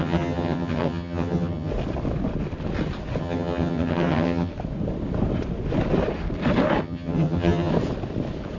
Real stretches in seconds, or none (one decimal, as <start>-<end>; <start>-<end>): 1.7-3.2; 4.5-6.8; 7.7-8.6